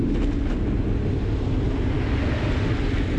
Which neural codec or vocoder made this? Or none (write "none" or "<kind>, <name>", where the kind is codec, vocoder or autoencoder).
none